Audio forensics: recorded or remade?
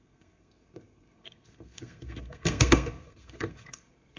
remade